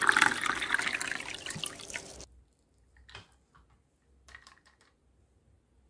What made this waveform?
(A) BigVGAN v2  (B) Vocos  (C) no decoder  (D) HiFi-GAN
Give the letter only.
C